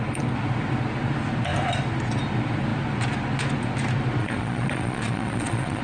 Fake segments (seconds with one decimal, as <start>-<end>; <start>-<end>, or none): 4.2-5.8

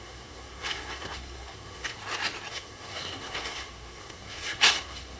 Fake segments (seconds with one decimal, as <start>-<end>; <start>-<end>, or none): 0.0-2.0; 2.5-5.2

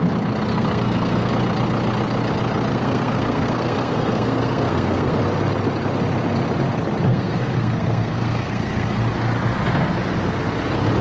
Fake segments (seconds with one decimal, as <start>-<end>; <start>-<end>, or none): 0.5-1.3; 2.7-5.2; 7.1-9.0

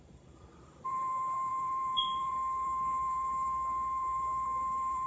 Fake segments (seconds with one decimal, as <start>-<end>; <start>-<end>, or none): 0.0-5.1